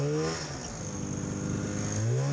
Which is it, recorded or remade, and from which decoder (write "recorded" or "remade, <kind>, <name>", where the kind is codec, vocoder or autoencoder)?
recorded